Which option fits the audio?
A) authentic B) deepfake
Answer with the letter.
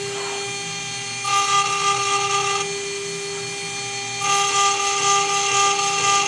A